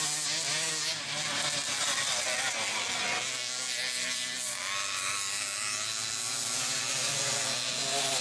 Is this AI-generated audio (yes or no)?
no